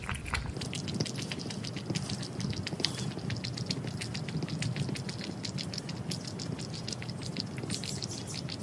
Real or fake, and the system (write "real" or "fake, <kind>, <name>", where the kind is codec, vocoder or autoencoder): real